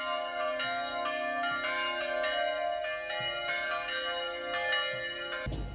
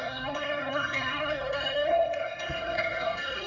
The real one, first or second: first